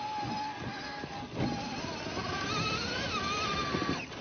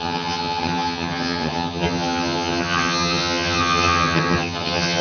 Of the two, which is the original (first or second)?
first